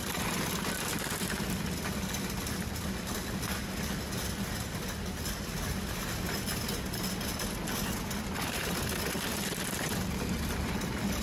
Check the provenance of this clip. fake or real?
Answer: real